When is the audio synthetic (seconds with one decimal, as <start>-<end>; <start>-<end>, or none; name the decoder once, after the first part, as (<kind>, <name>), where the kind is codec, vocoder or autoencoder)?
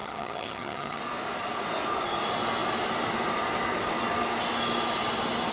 0.0-1.0 (vocoder, HiFi-GAN)